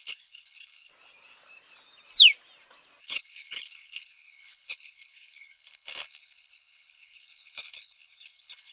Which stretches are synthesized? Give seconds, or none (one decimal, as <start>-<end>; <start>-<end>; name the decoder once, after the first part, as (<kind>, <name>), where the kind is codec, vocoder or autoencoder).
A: 0.0-0.9 (codec, HILCodec); 3.0-8.7